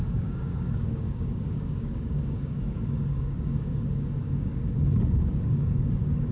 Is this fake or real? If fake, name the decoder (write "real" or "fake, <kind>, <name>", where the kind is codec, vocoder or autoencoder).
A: fake, codec, DAC